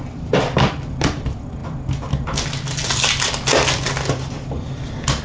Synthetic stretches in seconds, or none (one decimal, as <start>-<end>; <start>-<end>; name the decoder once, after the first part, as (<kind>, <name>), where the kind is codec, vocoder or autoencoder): none